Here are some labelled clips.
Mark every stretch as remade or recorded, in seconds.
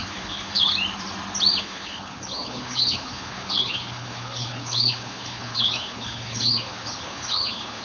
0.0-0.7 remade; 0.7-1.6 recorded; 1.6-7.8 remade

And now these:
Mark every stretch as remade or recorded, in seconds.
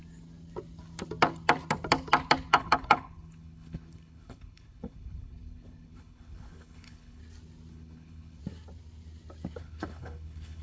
0.0-2.5 recorded; 2.5-7.2 remade; 7.2-7.7 recorded; 7.7-8.4 remade; 8.4-9.6 recorded; 9.6-10.6 remade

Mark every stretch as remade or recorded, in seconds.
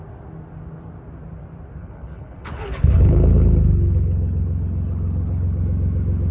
0.0-1.8 recorded; 1.8-5.6 remade; 5.6-6.3 recorded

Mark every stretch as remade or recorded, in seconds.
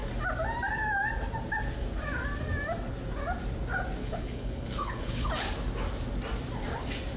0.0-4.0 recorded; 4.0-5.3 remade; 5.3-7.2 recorded